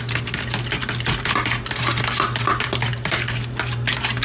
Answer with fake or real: real